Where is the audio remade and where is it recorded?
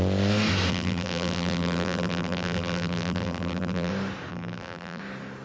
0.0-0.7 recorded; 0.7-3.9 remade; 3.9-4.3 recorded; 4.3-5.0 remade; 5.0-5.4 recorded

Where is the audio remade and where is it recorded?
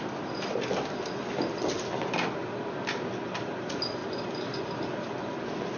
0.0-4.0 recorded; 4.0-4.8 remade; 4.8-5.8 recorded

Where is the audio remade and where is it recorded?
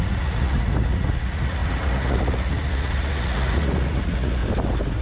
0.0-4.4 remade; 4.4-5.0 recorded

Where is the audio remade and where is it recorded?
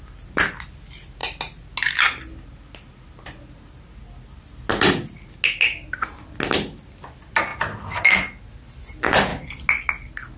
0.0-10.4 recorded